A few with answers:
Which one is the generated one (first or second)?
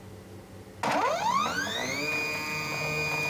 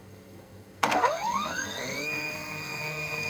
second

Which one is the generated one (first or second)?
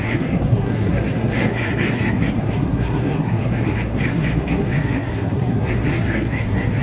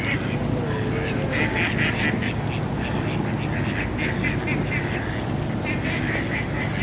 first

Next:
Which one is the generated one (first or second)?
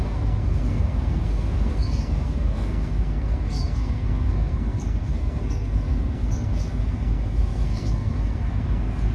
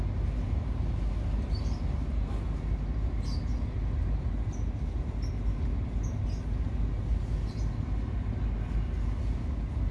first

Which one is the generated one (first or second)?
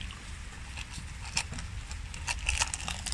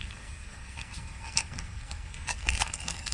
second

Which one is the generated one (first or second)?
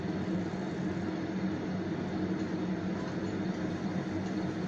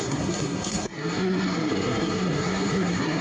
second